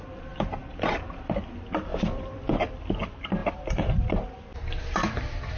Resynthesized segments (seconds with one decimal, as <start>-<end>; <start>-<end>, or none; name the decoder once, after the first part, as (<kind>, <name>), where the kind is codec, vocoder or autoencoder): 0.6-1.5 (vocoder, BigVGAN v2); 1.9-2.8; 3.4-4.0